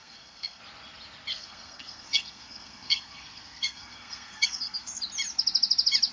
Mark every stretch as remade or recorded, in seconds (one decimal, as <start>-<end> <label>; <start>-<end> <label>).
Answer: 0.0-0.6 remade; 0.6-1.3 recorded; 1.3-5.0 remade; 5.0-6.1 recorded